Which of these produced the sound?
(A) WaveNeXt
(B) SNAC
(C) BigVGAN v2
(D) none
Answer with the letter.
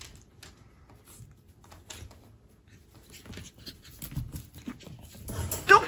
D